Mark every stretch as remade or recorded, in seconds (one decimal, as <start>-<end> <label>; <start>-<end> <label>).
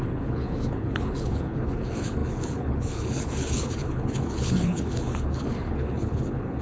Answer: 0.0-6.6 remade